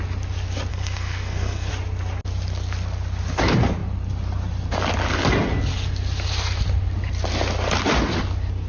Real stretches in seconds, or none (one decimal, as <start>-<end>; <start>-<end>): 0.0-0.7; 1.7-8.7